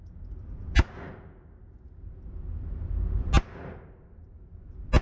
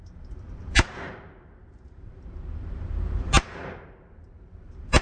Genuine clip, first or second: first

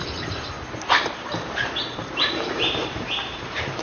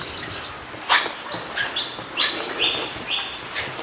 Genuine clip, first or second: second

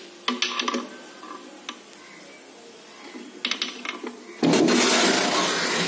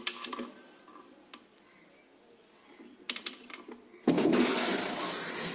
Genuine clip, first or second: first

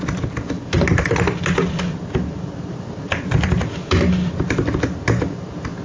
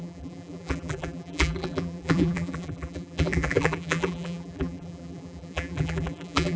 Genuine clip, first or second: first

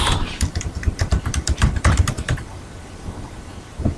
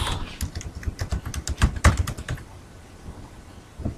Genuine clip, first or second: second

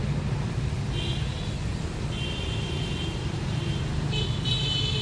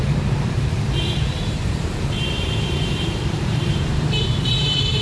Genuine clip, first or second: first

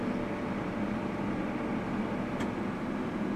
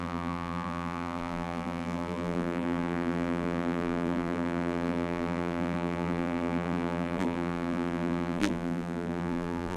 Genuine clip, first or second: first